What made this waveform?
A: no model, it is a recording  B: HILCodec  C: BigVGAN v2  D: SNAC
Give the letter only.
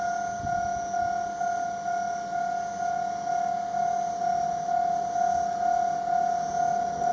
A